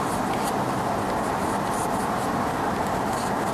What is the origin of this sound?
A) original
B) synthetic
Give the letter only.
A